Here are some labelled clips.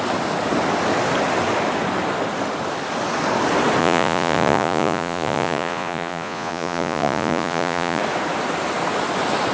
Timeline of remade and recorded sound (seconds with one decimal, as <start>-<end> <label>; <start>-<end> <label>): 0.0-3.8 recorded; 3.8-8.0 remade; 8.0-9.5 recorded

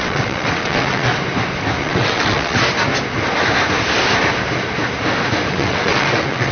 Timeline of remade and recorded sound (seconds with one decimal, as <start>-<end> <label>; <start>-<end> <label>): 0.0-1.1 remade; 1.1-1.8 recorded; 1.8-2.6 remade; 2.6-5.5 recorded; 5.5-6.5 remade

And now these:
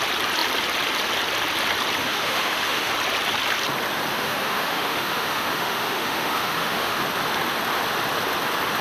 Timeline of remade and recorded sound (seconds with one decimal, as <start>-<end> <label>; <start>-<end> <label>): 0.0-2.0 recorded; 2.0-2.9 remade; 2.9-4.1 recorded; 4.1-7.0 remade; 7.0-8.8 recorded